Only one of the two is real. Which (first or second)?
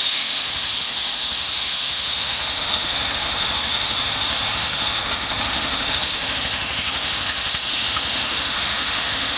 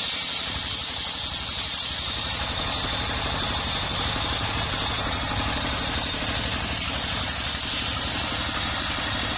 second